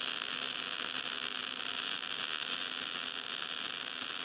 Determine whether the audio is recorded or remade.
recorded